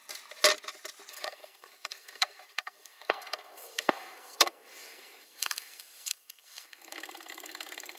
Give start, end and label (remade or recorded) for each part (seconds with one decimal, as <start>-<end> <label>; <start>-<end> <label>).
0.0-1.1 recorded; 1.1-8.0 remade